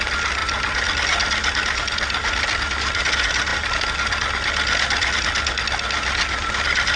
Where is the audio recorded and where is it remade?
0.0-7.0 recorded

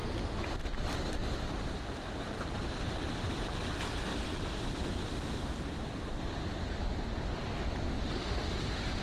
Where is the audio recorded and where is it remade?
0.0-2.7 recorded; 2.7-4.1 remade; 4.1-8.4 recorded; 8.4-9.0 remade